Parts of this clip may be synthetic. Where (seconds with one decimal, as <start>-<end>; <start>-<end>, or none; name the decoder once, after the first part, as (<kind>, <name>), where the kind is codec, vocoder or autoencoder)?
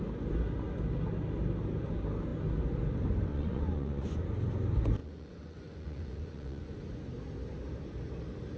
3.3-4.2 (vocoder, Vocos); 5.0-6.8